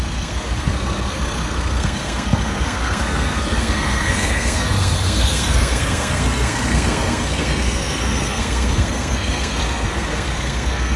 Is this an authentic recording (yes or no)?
no